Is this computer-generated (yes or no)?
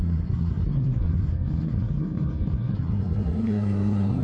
yes